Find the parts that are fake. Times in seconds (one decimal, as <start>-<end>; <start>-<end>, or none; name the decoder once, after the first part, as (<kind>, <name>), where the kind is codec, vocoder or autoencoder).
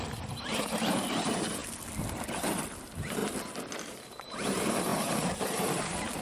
0.0-1.6 (vocoder, BigVGAN v2); 2.7-3.2; 3.8-6.2